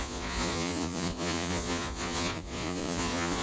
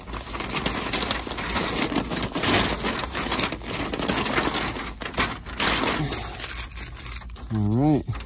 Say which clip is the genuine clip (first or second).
second